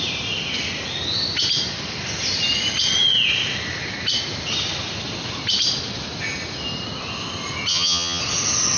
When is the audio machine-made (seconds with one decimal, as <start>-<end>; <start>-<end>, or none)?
7.7-8.2